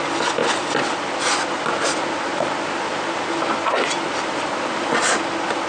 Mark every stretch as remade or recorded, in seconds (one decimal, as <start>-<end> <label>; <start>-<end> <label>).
0.0-5.7 recorded